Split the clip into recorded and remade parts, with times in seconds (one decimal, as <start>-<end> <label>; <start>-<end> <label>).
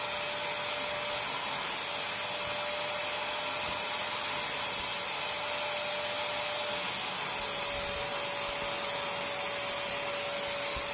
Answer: 0.0-10.9 recorded